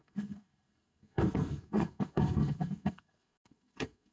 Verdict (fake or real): fake